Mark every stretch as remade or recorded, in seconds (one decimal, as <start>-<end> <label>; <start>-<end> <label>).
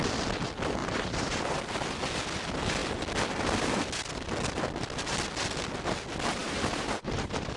0.0-0.8 recorded; 0.8-1.6 remade; 1.6-6.4 recorded; 6.4-7.6 remade